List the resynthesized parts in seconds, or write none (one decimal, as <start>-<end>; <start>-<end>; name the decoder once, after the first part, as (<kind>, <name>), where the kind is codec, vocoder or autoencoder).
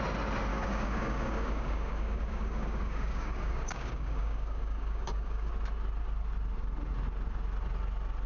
0.5-5.5 (codec, DAC)